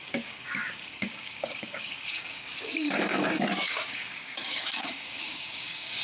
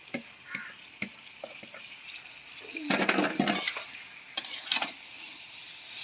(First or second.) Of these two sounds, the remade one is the first